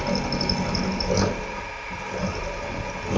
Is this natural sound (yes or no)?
yes